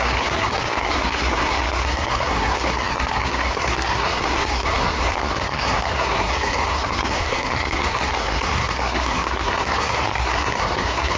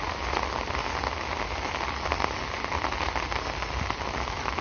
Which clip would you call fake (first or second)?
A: first